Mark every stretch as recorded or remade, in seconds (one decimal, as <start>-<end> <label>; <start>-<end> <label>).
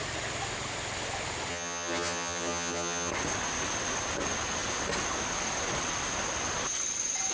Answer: 0.0-1.5 recorded; 1.5-3.1 remade; 3.1-7.3 recorded